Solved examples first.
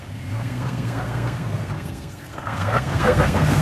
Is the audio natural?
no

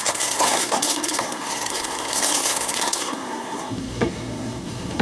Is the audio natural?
no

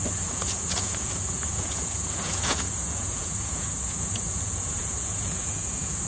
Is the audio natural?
no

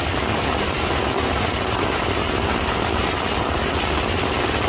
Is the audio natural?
yes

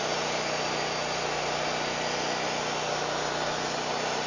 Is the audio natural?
yes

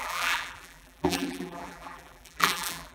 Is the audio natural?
no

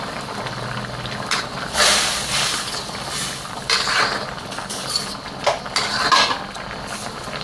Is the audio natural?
no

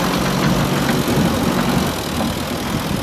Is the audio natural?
yes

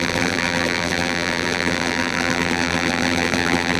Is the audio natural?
no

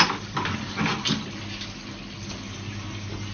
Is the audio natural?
yes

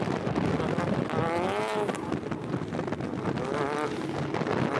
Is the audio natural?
yes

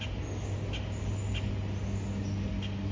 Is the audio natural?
yes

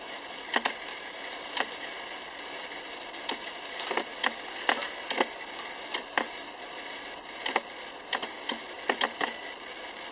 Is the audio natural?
yes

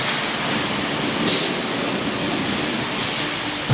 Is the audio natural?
yes